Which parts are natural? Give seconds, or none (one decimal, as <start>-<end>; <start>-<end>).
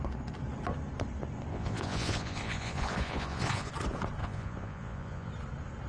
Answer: 0.0-1.5; 3.7-4.2; 5.3-5.9